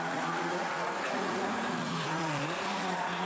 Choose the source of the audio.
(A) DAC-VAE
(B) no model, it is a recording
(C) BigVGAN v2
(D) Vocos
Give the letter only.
D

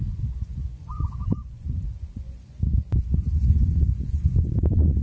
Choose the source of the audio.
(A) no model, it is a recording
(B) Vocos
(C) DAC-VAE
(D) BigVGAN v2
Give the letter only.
B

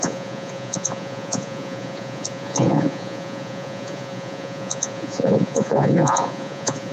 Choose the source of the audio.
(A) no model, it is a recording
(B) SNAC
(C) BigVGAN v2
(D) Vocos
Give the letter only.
D